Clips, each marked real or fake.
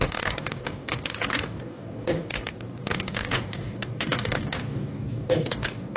fake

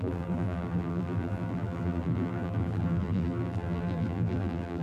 fake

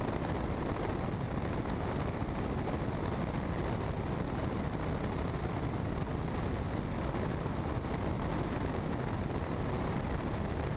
real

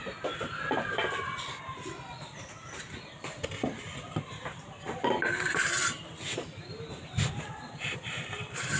real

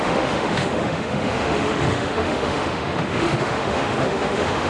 fake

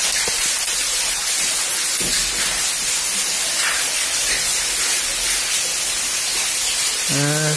real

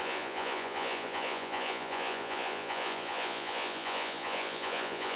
fake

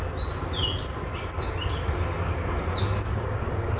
real